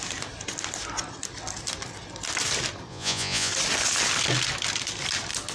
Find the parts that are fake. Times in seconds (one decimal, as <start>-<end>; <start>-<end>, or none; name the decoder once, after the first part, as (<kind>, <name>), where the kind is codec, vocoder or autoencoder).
2.9-3.5 (vocoder, Vocos)